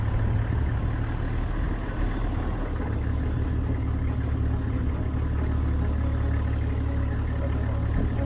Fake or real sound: real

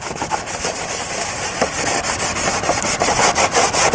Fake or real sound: real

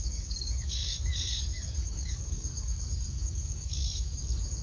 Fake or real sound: fake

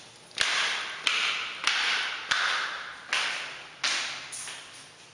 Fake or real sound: real